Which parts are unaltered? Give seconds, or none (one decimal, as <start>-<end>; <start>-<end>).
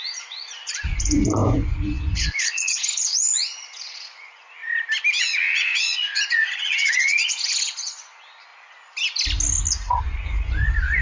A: 4.6-5.2; 8.5-10.0